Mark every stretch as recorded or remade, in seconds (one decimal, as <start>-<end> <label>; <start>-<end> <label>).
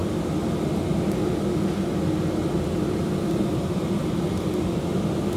0.0-5.4 recorded